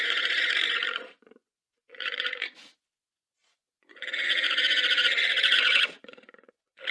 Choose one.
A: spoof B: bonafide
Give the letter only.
A